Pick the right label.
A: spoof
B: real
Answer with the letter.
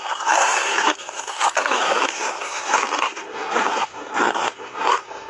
A